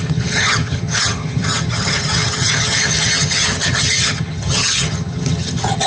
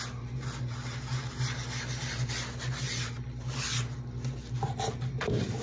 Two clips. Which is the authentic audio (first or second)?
second